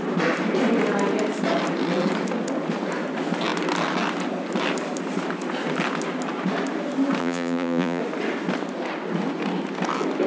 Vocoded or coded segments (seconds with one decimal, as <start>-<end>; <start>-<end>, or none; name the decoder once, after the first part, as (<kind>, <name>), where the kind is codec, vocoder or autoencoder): 7.2-8.0 (vocoder, Vocos)